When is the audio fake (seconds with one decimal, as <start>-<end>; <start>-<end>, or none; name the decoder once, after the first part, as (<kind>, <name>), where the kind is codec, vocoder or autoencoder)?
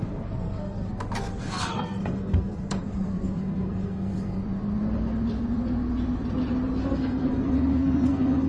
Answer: 0.0-4.4 (codec, SNAC); 6.8-8.5